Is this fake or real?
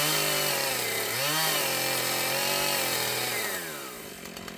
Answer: real